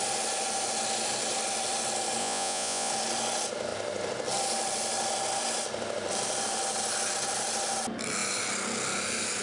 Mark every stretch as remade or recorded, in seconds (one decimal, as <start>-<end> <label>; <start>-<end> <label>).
0.0-2.2 recorded; 2.2-2.9 remade; 2.9-9.4 recorded